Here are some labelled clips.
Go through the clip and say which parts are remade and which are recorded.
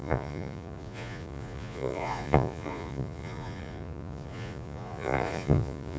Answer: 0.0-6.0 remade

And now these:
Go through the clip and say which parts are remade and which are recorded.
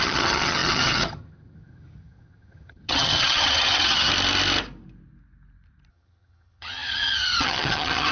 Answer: 0.0-4.1 remade; 4.1-5.9 recorded; 5.9-8.1 remade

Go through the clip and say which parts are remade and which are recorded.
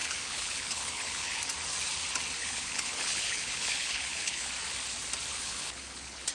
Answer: 0.0-1.4 remade; 1.4-2.4 recorded; 2.4-4.5 remade; 4.5-5.3 recorded; 5.3-6.3 remade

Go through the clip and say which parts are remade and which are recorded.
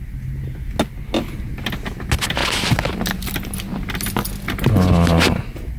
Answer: 0.0-5.8 recorded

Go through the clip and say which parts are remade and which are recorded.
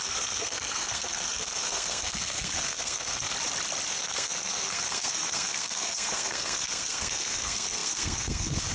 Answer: 0.0-3.3 remade; 3.3-3.9 recorded; 3.9-8.7 remade